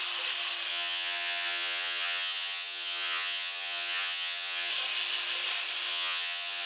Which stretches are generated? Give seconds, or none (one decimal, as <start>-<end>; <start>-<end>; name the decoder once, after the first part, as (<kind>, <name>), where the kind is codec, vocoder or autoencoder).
0.7-4.7 (vocoder, HiFi-GAN); 5.9-6.7